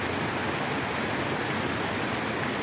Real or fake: real